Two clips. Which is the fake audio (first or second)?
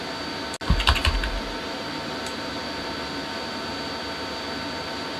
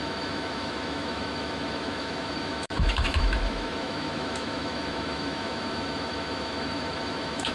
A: second